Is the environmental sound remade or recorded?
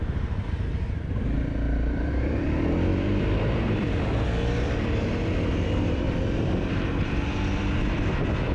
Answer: remade